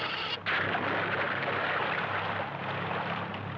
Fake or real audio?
real